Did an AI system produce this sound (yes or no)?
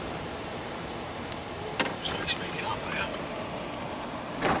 no